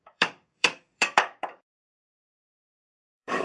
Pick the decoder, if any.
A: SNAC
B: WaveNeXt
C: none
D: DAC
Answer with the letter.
D